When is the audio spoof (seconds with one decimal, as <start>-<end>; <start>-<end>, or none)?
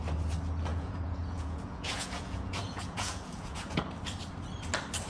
0.7-3.8